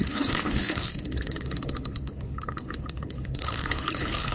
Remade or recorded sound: remade